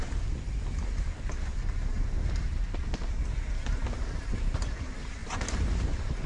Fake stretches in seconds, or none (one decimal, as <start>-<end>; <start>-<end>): none